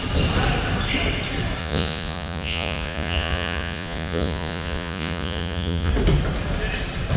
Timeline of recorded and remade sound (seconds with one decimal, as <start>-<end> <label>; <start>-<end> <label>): 0.0-1.6 recorded; 1.6-5.9 remade; 5.9-7.2 recorded